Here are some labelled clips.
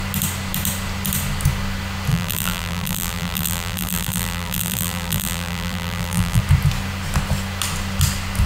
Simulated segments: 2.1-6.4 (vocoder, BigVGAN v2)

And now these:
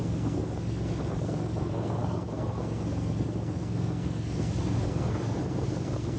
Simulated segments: 0.0-6.2 (codec, SNAC)

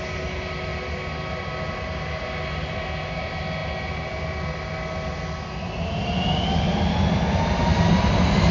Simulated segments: none

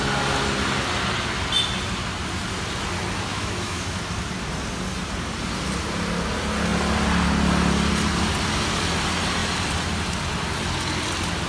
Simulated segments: 3.3-4.0 (autoencoder, DAC-VAE)